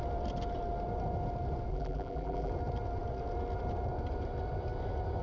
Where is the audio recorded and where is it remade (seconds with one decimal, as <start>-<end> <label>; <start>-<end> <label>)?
0.0-1.7 recorded; 1.7-2.5 remade; 2.5-5.2 recorded